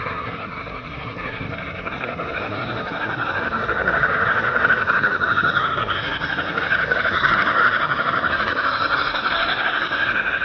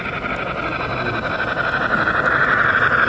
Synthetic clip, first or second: first